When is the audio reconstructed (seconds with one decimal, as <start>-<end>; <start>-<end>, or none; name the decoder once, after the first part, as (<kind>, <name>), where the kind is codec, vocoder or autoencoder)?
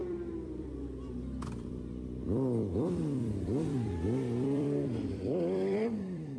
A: 0.0-6.4 (vocoder, BigVGAN v2)